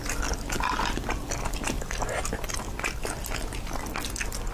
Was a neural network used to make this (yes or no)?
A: no